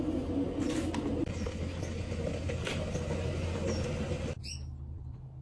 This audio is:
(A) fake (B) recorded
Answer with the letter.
B